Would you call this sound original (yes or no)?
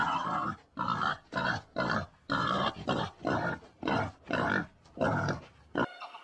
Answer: yes